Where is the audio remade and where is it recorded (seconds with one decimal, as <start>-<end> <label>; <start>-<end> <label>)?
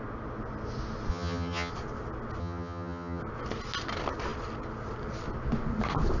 0.0-1.1 recorded; 1.1-1.7 remade; 1.7-2.4 recorded; 2.4-3.2 remade; 3.2-6.2 recorded